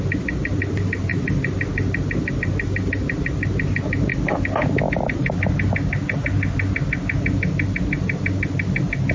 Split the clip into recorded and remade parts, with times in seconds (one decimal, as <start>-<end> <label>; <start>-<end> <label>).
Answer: 0.0-9.1 recorded